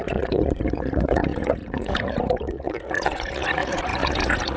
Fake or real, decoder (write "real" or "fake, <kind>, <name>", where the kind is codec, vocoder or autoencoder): fake, vocoder, Vocos